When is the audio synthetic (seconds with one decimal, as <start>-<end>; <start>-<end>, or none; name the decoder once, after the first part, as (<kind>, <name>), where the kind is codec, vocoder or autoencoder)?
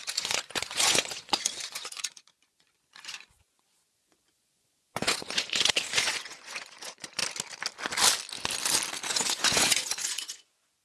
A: 0.0-7.2 (vocoder, Vocos); 9.1-10.8